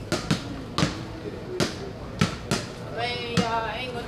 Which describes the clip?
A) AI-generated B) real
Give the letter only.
B